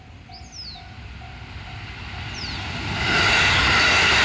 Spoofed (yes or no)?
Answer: no